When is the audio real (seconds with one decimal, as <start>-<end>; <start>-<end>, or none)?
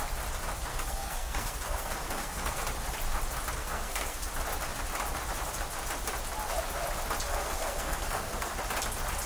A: 0.0-0.7; 2.6-3.6; 4.3-7.3; 8.5-9.3